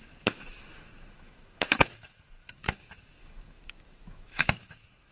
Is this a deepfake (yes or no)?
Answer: yes